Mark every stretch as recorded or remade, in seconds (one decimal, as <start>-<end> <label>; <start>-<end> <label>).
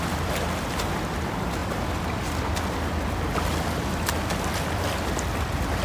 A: 0.0-5.8 recorded